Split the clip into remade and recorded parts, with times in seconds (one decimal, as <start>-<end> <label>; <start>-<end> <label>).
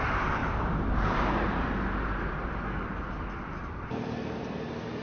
0.0-0.4 recorded; 0.4-2.5 remade; 2.5-3.5 recorded; 3.5-5.0 remade